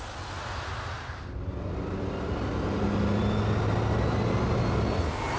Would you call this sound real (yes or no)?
yes